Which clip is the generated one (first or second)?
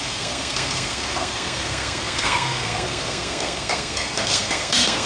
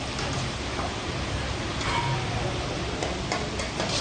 first